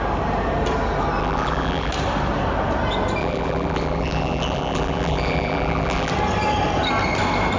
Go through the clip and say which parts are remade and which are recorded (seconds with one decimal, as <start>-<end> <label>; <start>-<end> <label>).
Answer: 0.0-1.2 recorded; 1.2-1.9 remade; 1.9-3.2 recorded; 3.2-6.1 remade; 6.1-7.6 recorded